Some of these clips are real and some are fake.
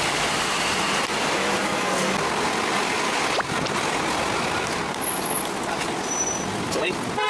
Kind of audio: real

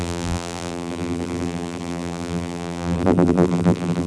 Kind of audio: fake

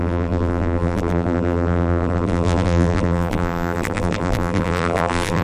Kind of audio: fake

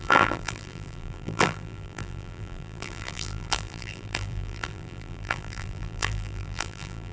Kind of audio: fake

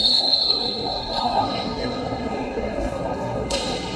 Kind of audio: fake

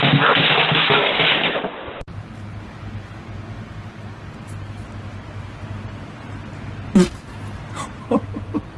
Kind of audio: real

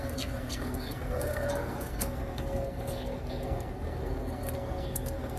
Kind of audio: fake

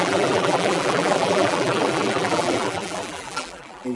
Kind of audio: fake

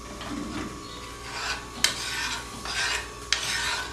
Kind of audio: real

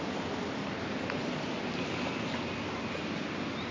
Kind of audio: real